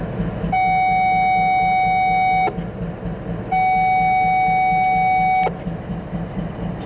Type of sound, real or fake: real